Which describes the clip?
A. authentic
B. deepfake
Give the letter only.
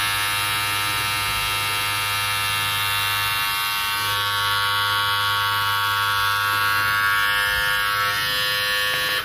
A